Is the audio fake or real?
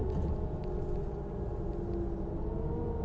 real